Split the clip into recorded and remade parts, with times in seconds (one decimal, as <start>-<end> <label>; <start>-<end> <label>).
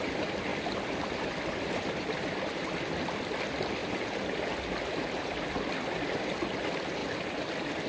0.0-0.5 remade; 0.5-1.2 recorded; 1.2-3.8 remade; 3.8-6.3 recorded; 6.3-7.0 remade; 7.0-7.9 recorded